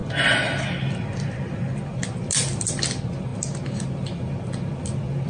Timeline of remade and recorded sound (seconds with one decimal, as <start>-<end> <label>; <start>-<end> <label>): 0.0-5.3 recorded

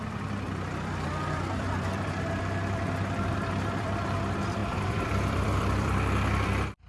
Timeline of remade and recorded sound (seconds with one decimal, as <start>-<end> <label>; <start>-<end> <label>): 0.0-6.9 remade

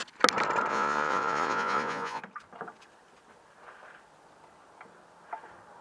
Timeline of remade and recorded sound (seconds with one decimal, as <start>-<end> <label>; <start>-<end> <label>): 0.0-0.7 recorded; 0.7-2.2 remade; 2.2-5.8 recorded

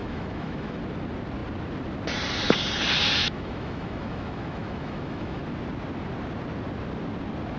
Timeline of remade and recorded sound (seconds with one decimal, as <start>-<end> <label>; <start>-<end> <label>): 0.0-0.8 remade; 0.8-3.2 recorded; 3.2-5.4 remade; 5.4-7.6 recorded

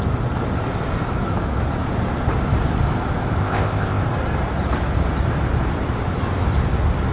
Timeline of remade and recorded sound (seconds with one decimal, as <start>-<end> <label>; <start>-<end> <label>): 0.0-3.4 recorded; 3.4-4.0 remade; 4.0-7.1 recorded